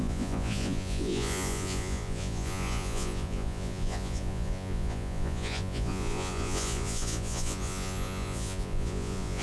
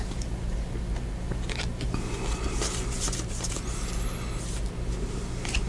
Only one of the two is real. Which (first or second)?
second